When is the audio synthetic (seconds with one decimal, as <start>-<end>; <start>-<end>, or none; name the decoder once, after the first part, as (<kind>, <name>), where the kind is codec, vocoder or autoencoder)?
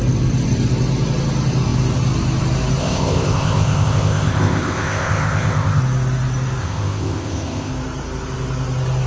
2.8-5.8 (codec, ZipCodec); 6.6-7.7